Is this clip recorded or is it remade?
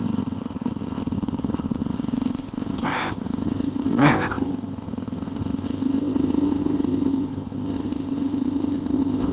remade